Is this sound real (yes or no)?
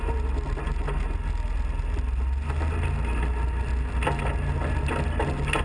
yes